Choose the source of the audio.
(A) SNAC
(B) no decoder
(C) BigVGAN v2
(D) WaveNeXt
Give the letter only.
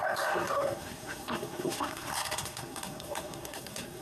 A